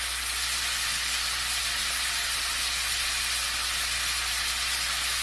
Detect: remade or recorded recorded